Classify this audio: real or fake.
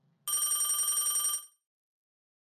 real